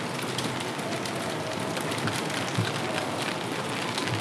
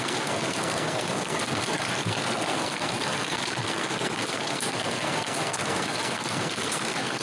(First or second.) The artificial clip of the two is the second